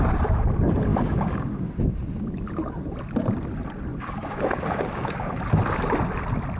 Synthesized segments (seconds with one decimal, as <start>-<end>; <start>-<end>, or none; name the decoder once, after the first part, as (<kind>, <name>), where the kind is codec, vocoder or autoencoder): 0.9-1.7 (codec, DAC); 3.9-5.4